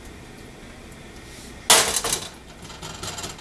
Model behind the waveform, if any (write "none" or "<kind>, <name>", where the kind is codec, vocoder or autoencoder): none